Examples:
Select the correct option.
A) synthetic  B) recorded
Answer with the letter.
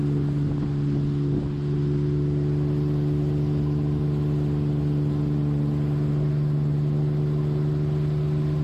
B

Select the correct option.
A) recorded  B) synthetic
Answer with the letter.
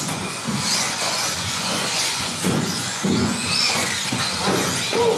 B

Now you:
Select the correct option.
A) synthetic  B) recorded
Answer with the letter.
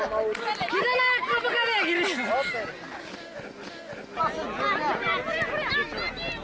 B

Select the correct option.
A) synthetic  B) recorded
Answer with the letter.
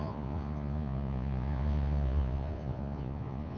A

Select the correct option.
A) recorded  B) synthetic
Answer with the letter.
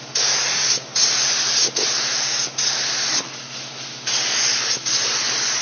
A